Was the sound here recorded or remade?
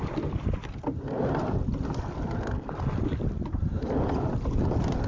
recorded